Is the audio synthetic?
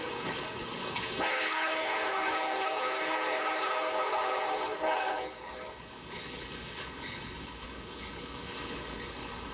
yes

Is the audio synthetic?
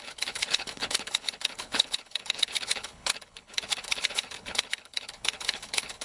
yes